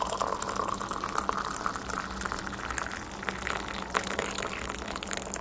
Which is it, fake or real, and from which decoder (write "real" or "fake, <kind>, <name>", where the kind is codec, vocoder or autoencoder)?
real